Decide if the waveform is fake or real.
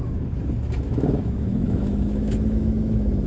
fake